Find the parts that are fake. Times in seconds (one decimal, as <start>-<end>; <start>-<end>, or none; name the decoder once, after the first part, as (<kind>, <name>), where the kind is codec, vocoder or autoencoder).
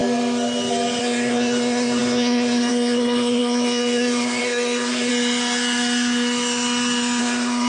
1.0-5.1 (codec, SNAC); 7.2-7.7